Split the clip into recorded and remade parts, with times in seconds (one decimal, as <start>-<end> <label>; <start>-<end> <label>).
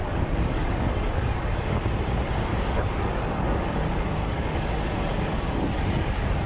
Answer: 0.0-1.9 remade; 1.9-2.5 recorded; 2.5-6.5 remade